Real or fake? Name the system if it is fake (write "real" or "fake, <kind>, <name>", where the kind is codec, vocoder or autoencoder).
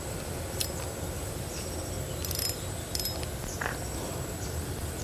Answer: real